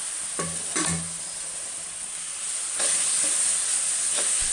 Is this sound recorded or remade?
recorded